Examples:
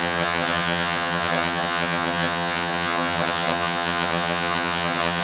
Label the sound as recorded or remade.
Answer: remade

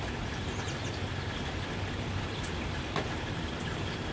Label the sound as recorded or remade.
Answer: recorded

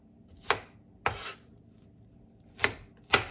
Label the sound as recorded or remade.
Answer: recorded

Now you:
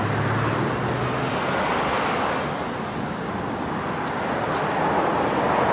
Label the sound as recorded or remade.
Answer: recorded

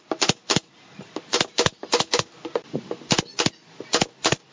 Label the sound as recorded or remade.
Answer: recorded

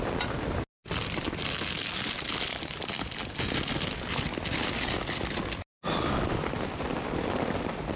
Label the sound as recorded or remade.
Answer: recorded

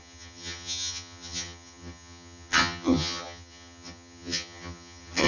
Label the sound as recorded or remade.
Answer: remade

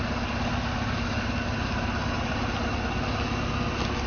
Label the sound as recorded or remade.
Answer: recorded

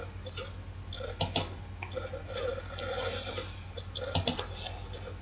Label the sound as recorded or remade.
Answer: recorded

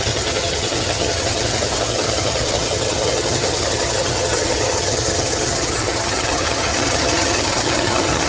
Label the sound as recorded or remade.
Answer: remade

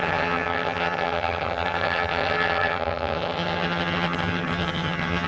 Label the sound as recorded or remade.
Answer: remade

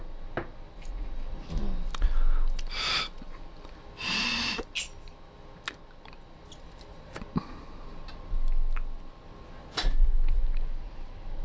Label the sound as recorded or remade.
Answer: recorded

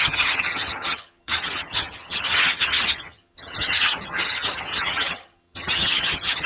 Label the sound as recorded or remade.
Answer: remade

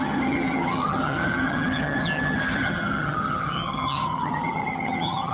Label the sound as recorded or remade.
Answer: remade